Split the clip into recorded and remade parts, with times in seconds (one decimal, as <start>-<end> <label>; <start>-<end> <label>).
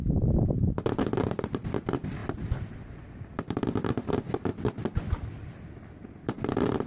0.0-4.5 remade; 4.5-5.1 recorded; 5.1-6.9 remade